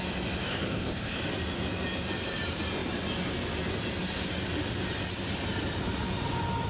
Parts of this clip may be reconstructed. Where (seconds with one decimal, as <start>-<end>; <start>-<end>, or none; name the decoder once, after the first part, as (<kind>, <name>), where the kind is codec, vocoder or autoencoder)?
0.5-1.2 (codec, ZipCodec)